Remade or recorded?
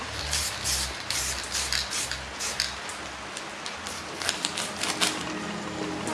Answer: recorded